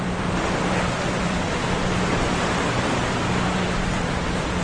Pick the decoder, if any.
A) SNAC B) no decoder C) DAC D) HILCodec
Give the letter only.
B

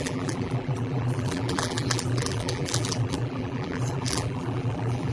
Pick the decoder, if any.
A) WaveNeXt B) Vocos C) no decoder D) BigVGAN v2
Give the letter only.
D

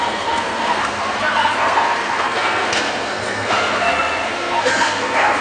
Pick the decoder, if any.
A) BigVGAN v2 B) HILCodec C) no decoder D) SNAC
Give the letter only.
D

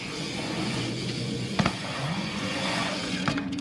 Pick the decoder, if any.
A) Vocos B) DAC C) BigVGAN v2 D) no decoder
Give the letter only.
A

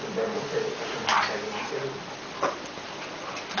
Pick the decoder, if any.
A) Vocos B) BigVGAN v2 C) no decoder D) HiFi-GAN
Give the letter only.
C